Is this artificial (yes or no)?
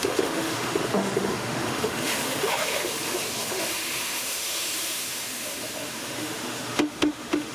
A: yes